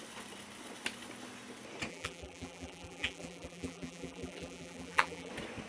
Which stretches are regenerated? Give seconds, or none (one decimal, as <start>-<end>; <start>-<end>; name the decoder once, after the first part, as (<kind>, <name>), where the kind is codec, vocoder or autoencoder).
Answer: 1.9-5.3 (vocoder, BigVGAN v2)